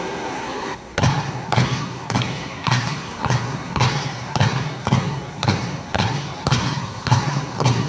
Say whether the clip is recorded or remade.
remade